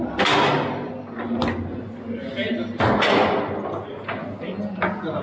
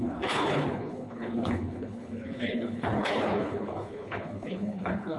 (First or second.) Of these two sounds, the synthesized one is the second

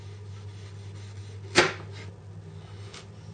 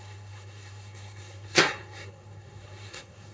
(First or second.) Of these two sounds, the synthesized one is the second